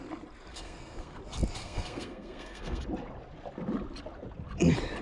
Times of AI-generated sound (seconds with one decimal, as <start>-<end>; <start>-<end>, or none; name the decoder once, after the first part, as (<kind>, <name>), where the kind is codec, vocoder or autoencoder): 0.5-1.2 (codec, SNAC); 1.6-2.8